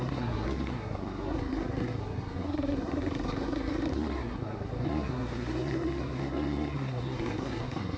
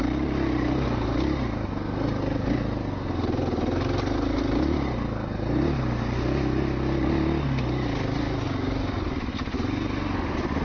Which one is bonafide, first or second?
second